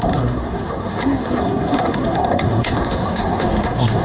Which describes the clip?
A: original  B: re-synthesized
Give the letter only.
B